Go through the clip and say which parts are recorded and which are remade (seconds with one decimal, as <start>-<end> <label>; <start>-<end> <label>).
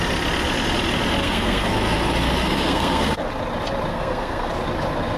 0.0-1.2 recorded; 1.2-1.8 remade; 1.8-2.4 recorded; 2.4-3.3 remade; 3.3-3.9 recorded; 3.9-4.5 remade; 4.5-5.2 recorded